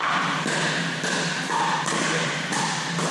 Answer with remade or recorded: remade